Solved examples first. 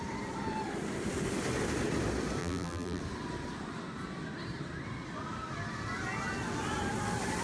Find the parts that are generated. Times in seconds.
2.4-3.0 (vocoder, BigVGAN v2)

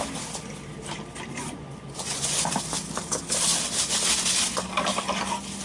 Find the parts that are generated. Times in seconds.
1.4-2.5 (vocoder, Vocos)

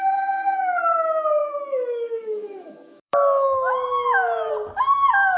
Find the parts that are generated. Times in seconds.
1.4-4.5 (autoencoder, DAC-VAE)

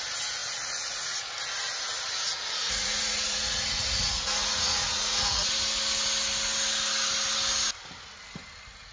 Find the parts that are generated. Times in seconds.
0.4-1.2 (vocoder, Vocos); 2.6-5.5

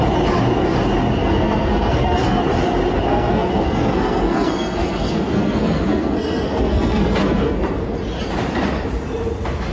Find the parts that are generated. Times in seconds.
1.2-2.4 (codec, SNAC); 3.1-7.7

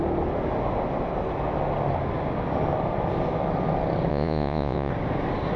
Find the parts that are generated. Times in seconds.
4.1-4.9 (vocoder, Vocos)